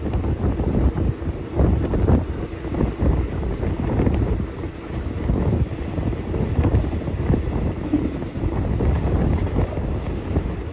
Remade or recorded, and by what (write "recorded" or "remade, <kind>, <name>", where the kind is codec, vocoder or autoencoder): recorded